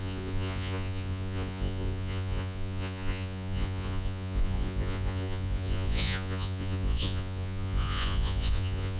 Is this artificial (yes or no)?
yes